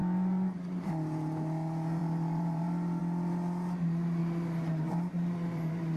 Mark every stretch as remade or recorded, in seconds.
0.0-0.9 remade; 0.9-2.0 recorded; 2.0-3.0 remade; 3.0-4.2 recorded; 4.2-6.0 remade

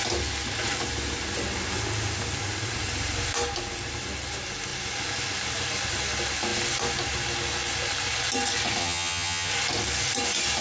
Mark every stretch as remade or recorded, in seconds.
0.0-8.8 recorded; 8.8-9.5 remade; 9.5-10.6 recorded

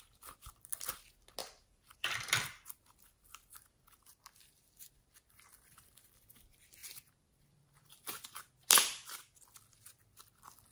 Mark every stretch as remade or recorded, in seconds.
0.0-1.4 recorded; 1.4-6.2 remade; 6.2-6.8 recorded; 6.8-8.4 remade; 8.4-10.7 recorded

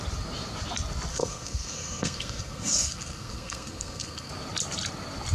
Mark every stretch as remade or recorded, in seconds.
0.0-1.1 recorded; 1.1-4.3 remade; 4.3-5.3 recorded

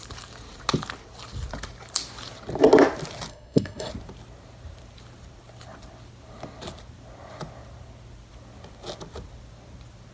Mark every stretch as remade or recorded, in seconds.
0.0-3.3 recorded; 3.3-3.9 remade; 3.9-10.1 recorded

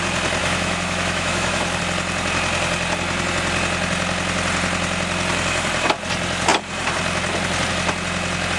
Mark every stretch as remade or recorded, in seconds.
0.0-0.4 recorded; 0.4-1.8 remade; 1.8-8.6 recorded

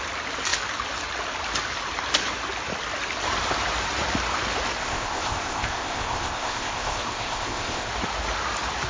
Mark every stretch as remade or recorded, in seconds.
0.0-4.8 recorded; 4.8-7.9 remade; 7.9-8.9 recorded